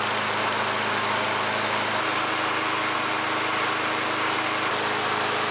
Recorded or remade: recorded